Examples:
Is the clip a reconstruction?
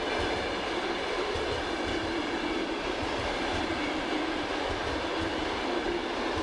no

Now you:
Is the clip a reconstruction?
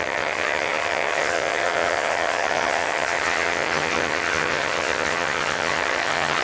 yes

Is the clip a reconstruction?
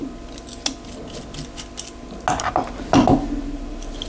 no